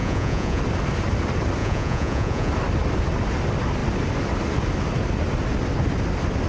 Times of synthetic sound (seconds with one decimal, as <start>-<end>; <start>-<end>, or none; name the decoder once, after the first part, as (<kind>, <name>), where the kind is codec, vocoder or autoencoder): 0.0-0.6 (vocoder, Vocos); 1.6-2.5